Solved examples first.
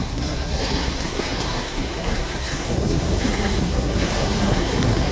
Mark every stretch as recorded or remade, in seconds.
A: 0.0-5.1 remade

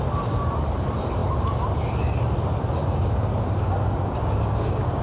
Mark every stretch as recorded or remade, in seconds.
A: 0.0-2.8 recorded; 2.8-5.0 remade

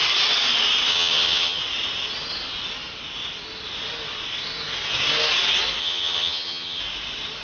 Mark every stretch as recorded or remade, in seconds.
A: 0.0-0.9 recorded; 0.9-1.6 remade; 1.6-5.8 recorded; 5.8-6.8 remade; 6.8-7.4 recorded

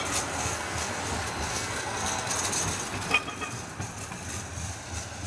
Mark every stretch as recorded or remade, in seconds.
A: 0.0-0.4 recorded; 0.4-1.0 remade; 1.0-1.5 recorded; 1.5-2.3 remade; 2.3-5.3 recorded

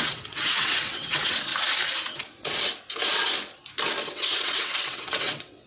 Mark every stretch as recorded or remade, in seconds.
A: 0.0-1.5 remade; 1.5-4.1 recorded; 4.1-5.7 remade

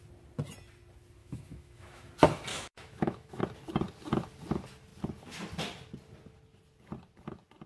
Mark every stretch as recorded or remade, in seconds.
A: 0.0-1.2 recorded; 1.2-2.1 remade; 2.1-2.5 recorded; 2.5-3.4 remade; 3.4-7.7 recorded

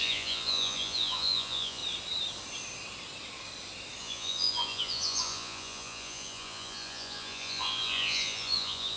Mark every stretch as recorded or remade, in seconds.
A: 0.0-1.8 remade; 1.8-4.0 recorded; 4.0-9.0 remade